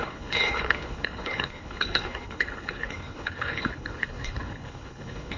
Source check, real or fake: fake